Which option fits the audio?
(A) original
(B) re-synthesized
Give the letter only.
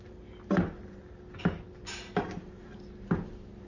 A